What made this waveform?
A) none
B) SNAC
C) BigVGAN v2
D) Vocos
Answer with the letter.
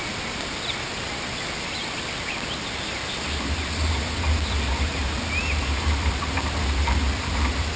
A